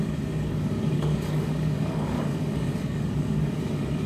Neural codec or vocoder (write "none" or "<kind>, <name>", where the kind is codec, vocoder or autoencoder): codec, DAC